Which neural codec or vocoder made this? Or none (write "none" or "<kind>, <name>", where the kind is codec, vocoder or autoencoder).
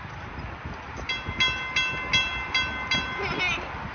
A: none